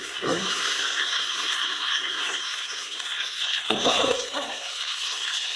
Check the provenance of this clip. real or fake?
fake